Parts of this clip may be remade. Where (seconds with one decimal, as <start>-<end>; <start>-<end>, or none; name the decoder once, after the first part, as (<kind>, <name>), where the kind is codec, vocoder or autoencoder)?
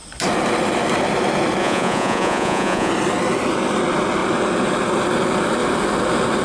1.6-2.9 (vocoder, Vocos)